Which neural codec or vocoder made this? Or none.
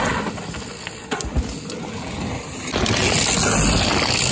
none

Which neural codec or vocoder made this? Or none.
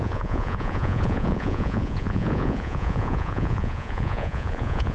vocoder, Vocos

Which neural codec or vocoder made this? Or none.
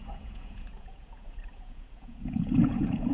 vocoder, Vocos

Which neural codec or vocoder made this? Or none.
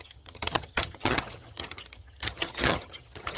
vocoder, HiFi-GAN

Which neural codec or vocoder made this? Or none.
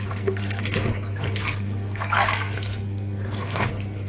codec, SNAC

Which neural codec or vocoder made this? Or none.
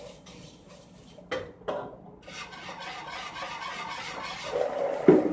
none